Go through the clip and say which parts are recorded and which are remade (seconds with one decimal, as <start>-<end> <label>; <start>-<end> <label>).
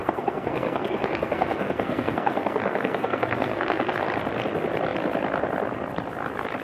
0.0-4.0 remade; 4.0-6.6 recorded